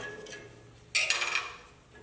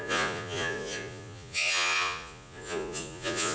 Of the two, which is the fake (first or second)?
second